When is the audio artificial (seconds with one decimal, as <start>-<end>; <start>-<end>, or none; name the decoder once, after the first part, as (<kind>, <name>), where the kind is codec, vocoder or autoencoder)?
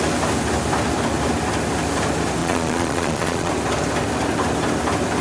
2.4-3.5 (vocoder, Vocos)